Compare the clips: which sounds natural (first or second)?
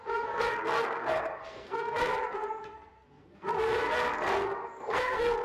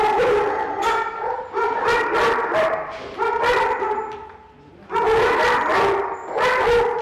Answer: second